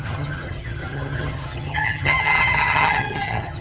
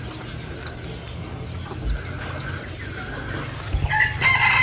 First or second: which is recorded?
second